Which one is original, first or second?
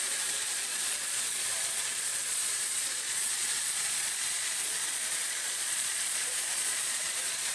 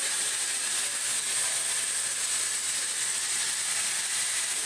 second